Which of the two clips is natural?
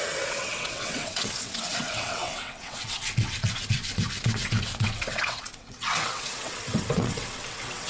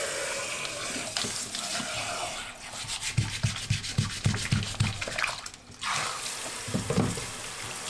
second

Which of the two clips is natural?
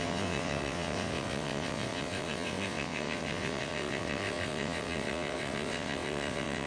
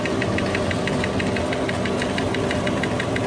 second